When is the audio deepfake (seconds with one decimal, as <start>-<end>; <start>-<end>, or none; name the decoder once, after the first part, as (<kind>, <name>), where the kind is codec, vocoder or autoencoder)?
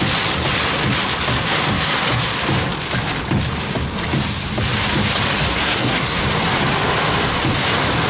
5.5-6.2 (codec, SNAC)